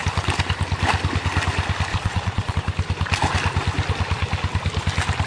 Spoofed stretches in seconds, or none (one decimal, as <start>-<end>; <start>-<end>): 1.9-2.5